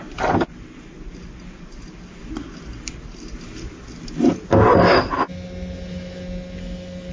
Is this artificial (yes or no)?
no